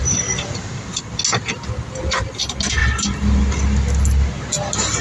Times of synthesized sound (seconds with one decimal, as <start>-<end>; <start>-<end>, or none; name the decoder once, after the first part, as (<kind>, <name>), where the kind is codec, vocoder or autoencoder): 0.0-0.8 (vocoder, BigVGAN v2)